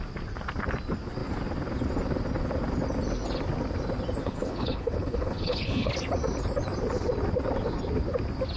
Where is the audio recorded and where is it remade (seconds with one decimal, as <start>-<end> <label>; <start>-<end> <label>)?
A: 0.0-4.2 recorded; 4.2-5.9 remade; 5.9-8.6 recorded